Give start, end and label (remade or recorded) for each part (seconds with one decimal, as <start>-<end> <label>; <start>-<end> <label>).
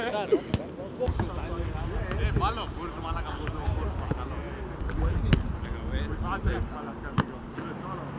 0.0-8.2 recorded